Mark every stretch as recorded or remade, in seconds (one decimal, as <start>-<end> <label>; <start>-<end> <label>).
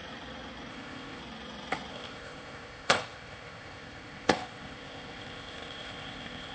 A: 0.0-0.7 recorded; 0.7-1.2 remade; 1.2-1.9 recorded; 1.9-6.5 remade